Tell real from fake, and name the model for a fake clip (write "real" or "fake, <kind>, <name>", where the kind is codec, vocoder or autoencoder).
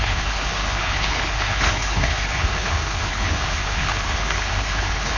fake, codec, HILCodec